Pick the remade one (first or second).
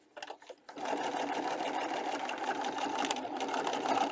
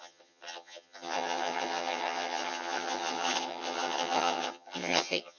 second